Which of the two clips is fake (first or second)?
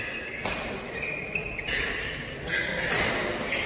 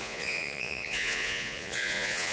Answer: second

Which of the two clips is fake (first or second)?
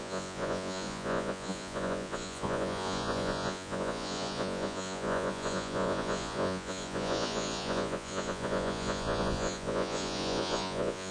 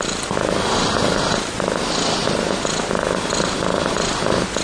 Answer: first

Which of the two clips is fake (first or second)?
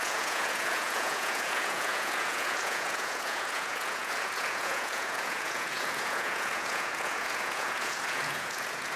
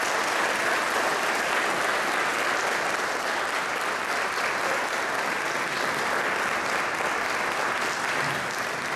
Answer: first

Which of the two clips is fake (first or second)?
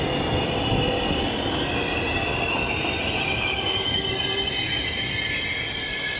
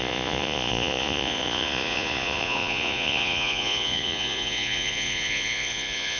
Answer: second